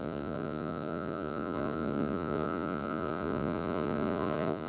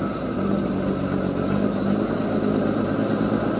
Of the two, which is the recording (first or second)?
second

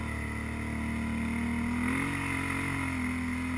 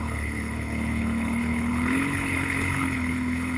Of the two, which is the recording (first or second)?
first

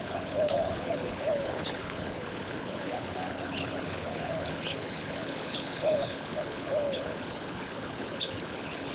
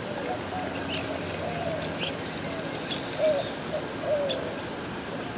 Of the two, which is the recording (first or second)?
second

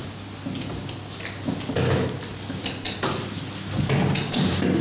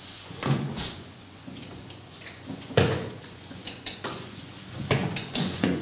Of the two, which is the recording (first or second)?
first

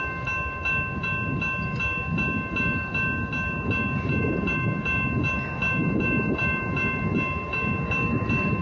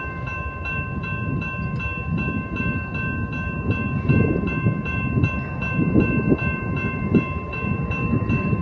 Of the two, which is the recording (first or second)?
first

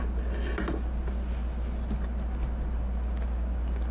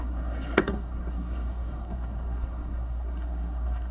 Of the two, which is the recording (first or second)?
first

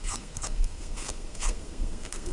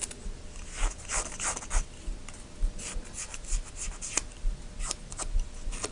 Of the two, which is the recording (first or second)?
second